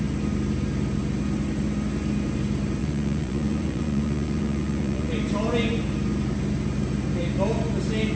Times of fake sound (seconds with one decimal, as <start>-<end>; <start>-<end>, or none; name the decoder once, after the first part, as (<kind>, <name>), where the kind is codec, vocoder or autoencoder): 2.8-5.1 (vocoder, Vocos)